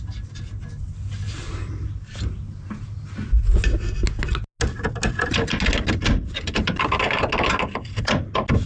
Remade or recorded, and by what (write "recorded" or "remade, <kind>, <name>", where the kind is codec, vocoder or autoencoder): recorded